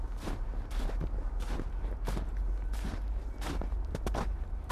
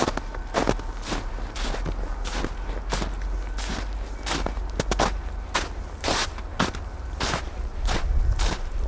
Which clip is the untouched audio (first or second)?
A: second